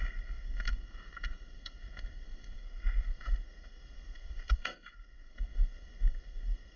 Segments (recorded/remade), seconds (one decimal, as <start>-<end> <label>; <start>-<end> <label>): 0.0-6.8 remade